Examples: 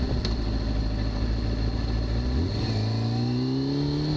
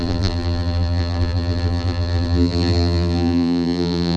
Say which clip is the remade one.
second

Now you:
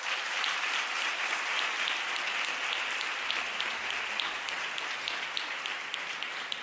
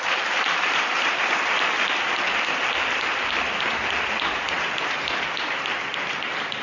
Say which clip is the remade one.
second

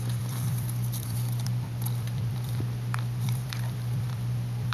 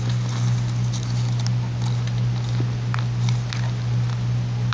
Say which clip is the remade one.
first